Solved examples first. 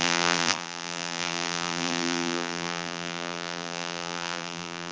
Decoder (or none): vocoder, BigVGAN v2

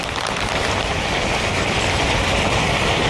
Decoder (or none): vocoder, BigVGAN v2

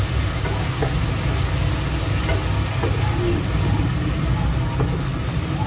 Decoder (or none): none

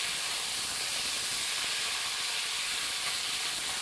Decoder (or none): vocoder, BigVGAN v2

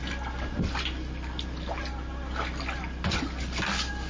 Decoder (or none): none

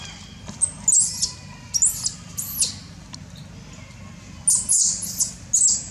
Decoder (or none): none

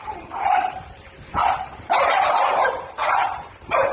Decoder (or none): vocoder, BigVGAN v2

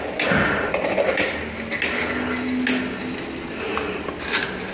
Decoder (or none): none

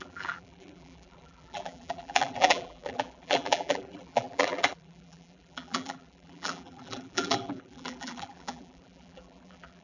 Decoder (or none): vocoder, BigVGAN v2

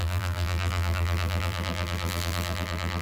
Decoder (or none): vocoder, BigVGAN v2